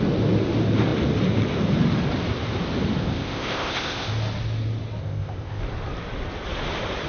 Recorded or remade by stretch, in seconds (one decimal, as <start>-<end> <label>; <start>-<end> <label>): 0.0-3.0 recorded; 3.0-4.1 remade; 4.1-5.0 recorded; 5.0-5.6 remade; 5.6-7.1 recorded